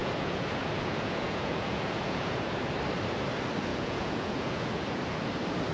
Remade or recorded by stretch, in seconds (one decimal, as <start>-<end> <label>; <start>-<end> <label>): 0.0-2.6 remade; 2.6-3.7 recorded; 3.7-5.3 remade; 5.3-5.7 recorded